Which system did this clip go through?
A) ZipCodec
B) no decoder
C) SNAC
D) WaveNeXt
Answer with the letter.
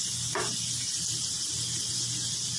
B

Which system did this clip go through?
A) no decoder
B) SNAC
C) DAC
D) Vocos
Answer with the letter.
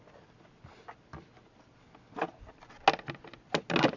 A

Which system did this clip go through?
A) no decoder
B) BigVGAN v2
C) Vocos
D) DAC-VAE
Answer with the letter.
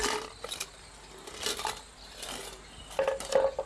A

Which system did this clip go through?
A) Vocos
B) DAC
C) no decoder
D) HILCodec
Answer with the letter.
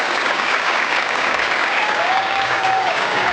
B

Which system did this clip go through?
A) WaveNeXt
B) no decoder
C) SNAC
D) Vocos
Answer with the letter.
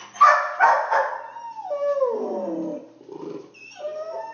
B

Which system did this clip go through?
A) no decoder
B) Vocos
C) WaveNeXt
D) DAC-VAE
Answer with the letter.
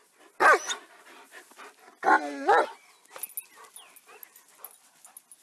A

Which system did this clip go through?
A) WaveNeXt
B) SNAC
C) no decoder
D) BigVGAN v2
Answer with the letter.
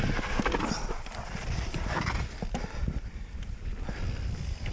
C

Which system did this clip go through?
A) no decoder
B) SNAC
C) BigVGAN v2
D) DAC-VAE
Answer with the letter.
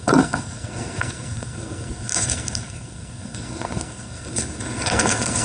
B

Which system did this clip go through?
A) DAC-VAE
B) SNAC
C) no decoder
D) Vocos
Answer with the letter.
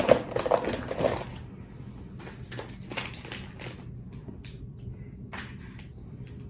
C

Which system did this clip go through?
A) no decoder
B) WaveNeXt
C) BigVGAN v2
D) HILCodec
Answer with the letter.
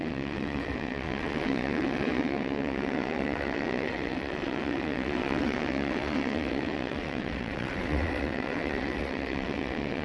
B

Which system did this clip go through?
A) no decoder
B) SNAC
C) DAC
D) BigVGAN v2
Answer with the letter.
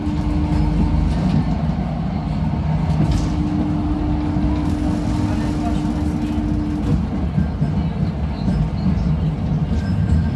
A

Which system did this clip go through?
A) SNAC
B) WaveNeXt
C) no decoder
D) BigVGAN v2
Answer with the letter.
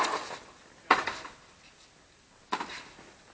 C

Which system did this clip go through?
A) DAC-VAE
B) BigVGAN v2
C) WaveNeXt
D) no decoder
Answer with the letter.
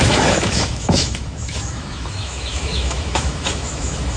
A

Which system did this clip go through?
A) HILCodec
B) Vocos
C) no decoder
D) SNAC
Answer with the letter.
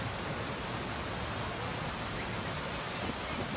C